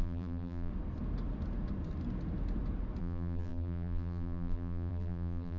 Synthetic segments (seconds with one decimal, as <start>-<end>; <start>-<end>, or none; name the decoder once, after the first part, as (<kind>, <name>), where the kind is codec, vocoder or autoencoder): 0.0-0.7 (vocoder, BigVGAN v2); 3.0-5.6